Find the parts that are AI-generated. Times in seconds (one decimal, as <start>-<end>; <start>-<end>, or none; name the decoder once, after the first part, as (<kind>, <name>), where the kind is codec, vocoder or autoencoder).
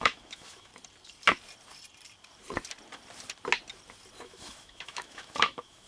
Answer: 0.0-0.7 (autoencoder, DAC-VAE); 4.2-5.9